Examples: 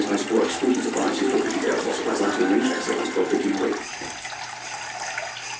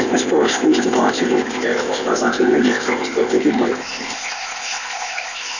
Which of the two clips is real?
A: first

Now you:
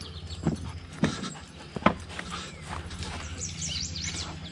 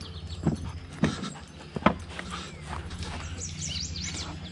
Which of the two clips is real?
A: second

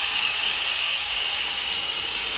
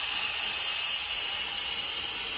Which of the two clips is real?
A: second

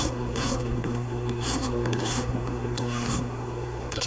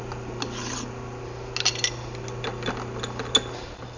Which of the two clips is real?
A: second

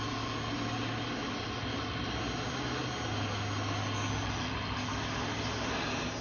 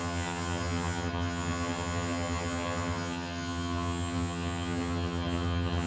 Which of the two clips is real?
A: first